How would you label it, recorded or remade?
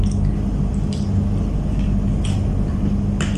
recorded